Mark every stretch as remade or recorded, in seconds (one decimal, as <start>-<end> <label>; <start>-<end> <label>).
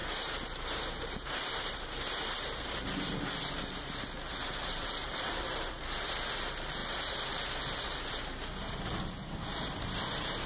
0.0-3.5 remade; 3.5-4.4 recorded; 4.4-5.7 remade; 5.7-10.5 recorded